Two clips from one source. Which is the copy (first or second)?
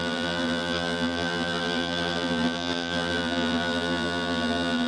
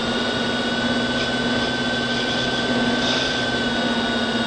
first